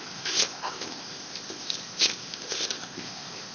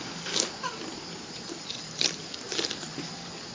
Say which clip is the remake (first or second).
first